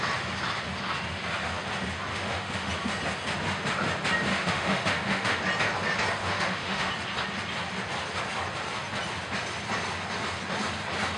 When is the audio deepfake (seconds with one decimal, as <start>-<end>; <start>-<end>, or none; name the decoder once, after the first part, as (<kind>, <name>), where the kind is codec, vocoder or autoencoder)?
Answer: 2.1-2.7 (autoencoder, DAC-VAE); 4.3-5.4; 6.2-6.9